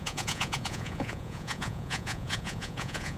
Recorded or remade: remade